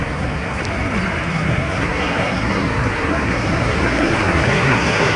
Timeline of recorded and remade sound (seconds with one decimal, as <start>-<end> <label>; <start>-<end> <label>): 0.0-0.6 remade; 0.6-1.3 recorded; 1.3-5.2 remade